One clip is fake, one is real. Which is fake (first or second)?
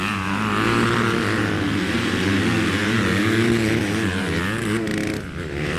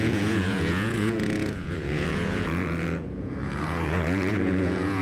second